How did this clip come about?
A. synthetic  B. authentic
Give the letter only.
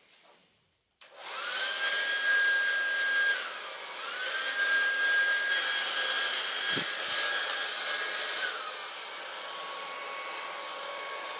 B